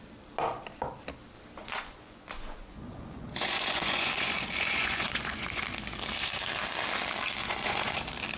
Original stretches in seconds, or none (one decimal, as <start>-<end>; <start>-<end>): 0.0-1.6; 5.6-7.4; 8.0-8.4